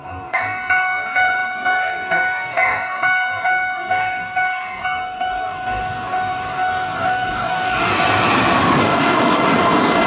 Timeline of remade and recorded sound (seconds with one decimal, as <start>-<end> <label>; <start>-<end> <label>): 0.0-7.9 remade; 7.9-8.8 recorded; 8.8-10.1 remade